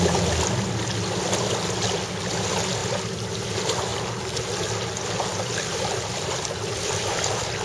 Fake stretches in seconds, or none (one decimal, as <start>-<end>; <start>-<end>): none